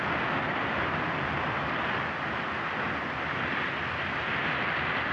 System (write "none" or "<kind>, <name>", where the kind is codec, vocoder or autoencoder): none